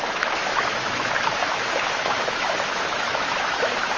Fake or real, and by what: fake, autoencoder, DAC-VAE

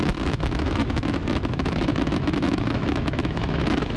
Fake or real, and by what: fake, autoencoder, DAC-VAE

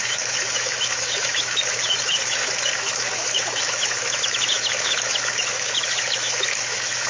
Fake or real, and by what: fake, autoencoder, DAC-VAE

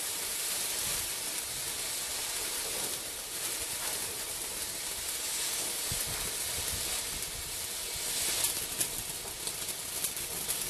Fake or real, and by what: real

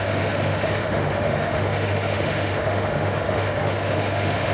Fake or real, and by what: fake, autoencoder, DAC-VAE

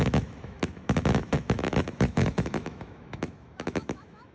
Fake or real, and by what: fake, autoencoder, DAC-VAE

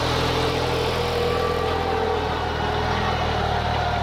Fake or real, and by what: real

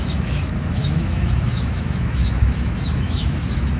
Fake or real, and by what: fake, autoencoder, DAC-VAE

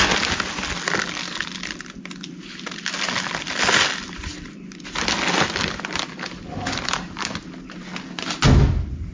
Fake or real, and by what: real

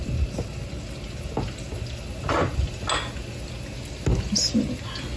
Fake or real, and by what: real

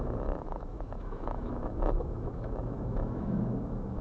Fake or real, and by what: fake, autoencoder, DAC-VAE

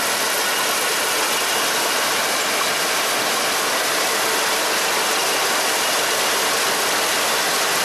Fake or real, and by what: real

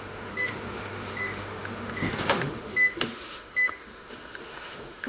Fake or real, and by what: fake, autoencoder, DAC-VAE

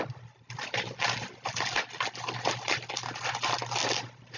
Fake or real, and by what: real